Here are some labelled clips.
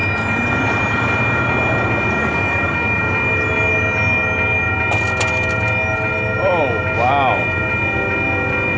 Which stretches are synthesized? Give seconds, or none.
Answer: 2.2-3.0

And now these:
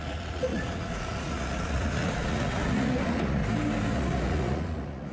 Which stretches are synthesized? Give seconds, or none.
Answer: 0.0-3.4; 3.9-5.1

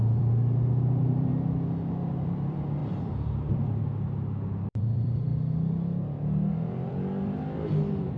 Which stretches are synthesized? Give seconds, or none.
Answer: 0.0-1.3; 1.9-5.3; 6.9-8.2

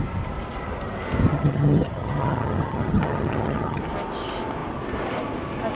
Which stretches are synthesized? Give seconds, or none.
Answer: 1.3-3.8

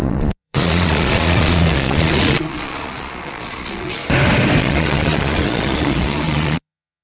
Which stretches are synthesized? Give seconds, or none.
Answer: 0.0-4.0; 4.6-7.0